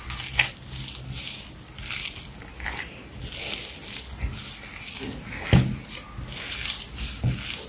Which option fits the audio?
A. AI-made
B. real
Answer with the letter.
B